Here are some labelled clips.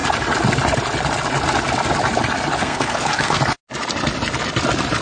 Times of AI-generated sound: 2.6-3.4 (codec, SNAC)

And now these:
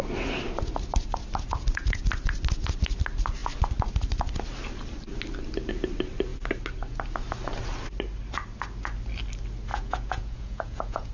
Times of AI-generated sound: 9.7-11.1 (vocoder, Vocos)